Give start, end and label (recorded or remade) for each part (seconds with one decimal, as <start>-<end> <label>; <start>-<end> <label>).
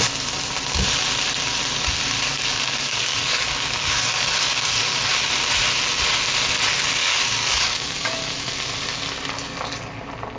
0.0-2.3 recorded; 2.3-5.1 remade; 5.1-7.0 recorded; 7.0-8.5 remade; 8.5-10.4 recorded